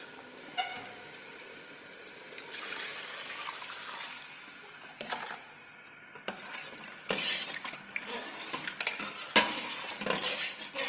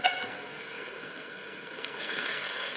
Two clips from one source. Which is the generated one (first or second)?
second